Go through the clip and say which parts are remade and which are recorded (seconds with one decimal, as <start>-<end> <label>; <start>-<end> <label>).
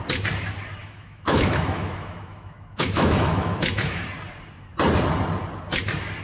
0.0-0.8 recorded; 0.8-4.0 remade; 4.0-6.2 recorded